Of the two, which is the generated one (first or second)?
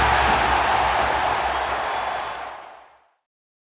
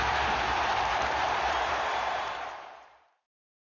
second